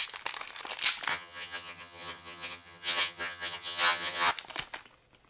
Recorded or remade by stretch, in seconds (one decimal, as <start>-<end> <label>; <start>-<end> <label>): 0.0-1.1 recorded; 1.1-4.3 remade; 4.3-5.3 recorded